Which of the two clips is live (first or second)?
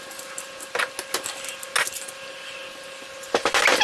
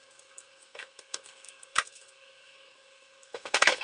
first